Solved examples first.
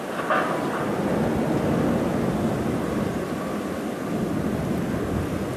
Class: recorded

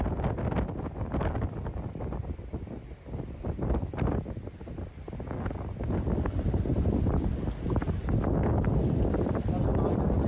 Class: recorded